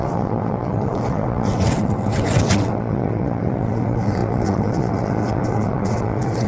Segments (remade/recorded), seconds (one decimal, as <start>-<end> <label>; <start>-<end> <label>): 0.0-6.5 remade